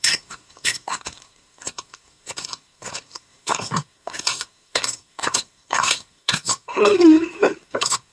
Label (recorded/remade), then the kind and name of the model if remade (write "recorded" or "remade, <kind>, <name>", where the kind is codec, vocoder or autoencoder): remade, codec, SNAC